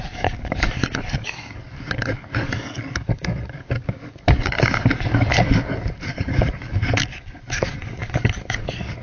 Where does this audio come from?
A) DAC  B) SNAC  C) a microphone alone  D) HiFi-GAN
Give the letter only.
A